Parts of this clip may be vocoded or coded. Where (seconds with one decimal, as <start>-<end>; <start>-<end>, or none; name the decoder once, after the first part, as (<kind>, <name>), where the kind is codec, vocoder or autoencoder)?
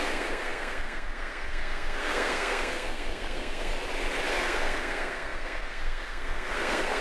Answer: 0.0-3.7 (codec, SNAC); 4.3-7.0